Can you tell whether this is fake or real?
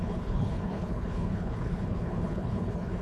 fake